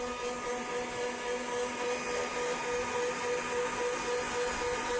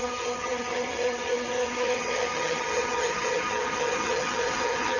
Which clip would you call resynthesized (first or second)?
second